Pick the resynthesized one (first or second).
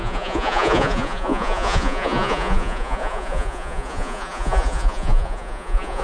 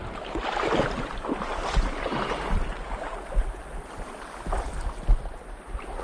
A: first